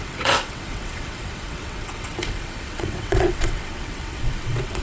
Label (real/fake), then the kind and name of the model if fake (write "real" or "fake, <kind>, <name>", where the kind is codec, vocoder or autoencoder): fake, vocoder, WaveNeXt